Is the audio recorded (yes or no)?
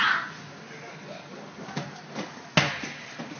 yes